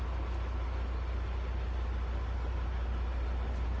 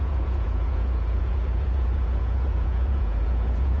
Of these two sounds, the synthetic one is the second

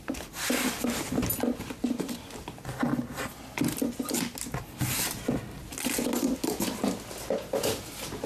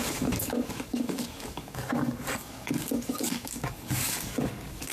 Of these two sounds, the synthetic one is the second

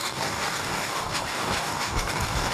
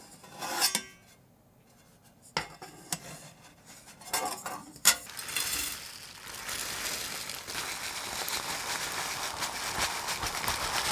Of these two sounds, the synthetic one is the first